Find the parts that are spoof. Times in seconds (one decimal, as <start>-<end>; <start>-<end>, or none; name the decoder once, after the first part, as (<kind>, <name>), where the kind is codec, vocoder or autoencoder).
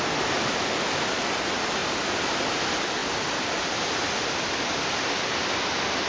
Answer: none